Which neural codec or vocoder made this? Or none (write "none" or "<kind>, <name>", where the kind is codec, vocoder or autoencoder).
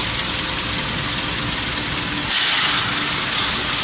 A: none